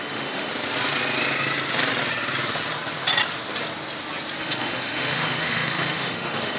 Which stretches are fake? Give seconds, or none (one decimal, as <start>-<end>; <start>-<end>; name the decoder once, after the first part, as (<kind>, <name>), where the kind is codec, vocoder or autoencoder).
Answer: 0.0-0.5 (autoencoder, DAC-VAE); 4.4-6.6